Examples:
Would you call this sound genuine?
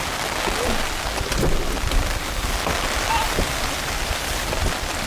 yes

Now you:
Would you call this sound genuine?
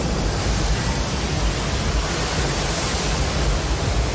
yes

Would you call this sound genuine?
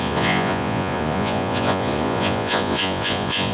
no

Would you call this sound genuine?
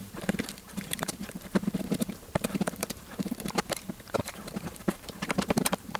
no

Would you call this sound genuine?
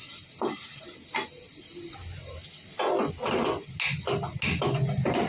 yes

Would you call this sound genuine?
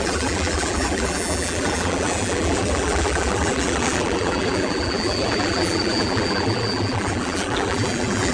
no